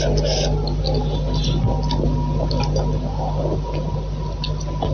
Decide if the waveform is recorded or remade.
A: recorded